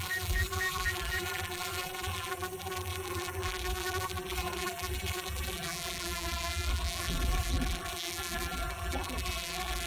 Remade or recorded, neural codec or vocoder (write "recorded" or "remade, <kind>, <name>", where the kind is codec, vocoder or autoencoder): remade, vocoder, BigVGAN v2